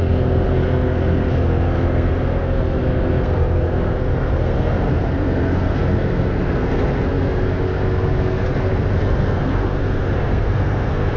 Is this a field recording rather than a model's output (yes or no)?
no